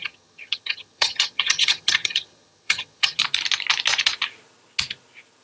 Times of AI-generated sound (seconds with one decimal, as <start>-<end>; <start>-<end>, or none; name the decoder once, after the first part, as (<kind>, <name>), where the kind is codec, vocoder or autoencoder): 0.0-3.2 (vocoder, HiFi-GAN)